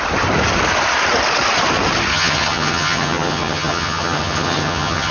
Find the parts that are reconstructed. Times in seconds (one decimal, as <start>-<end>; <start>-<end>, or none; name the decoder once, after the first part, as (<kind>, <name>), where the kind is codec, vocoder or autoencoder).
2.1-5.1 (vocoder, HiFi-GAN)